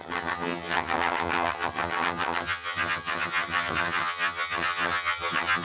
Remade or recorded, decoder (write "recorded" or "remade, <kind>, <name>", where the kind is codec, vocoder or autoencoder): remade, vocoder, HiFi-GAN